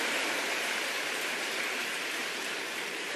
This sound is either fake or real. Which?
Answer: fake